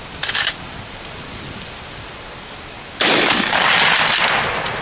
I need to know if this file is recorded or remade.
recorded